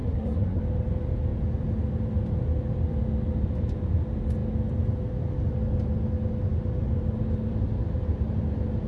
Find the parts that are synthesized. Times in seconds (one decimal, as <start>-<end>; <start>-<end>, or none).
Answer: 0.0-0.6